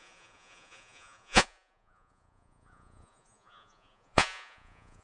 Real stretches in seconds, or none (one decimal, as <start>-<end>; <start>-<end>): none

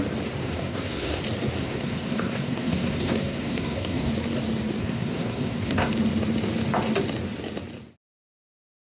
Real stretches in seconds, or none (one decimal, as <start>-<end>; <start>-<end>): 0.0-0.4; 1.2-1.6; 4.1-4.8; 5.9-8.9

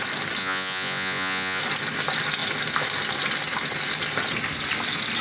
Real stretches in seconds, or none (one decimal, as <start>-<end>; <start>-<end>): 0.0-0.4; 1.6-5.2

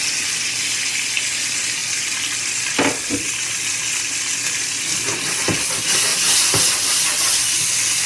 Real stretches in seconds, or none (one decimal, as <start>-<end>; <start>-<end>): 0.0-8.1

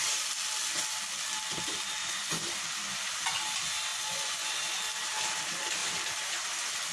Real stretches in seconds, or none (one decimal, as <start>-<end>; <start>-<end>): 0.0-2.0; 2.5-3.9; 4.5-6.9

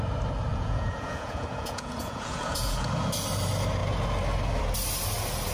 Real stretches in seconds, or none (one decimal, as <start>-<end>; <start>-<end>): 0.0-0.5; 2.9-5.5